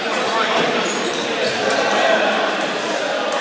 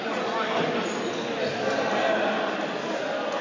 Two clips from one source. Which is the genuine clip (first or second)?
second